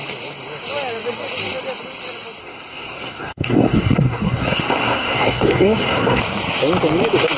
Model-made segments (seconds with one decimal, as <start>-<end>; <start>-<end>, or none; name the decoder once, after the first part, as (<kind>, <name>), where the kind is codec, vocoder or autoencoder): 2.4-6.2 (codec, SNAC)